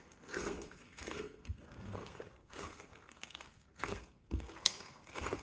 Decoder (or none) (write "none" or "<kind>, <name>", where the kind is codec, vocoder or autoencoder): codec, SNAC